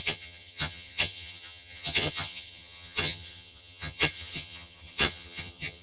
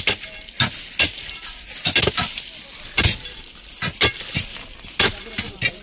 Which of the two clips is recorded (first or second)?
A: second